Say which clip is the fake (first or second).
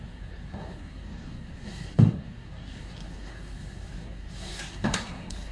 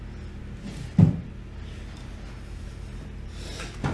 first